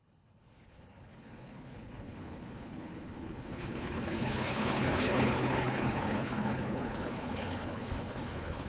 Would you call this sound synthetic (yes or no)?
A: yes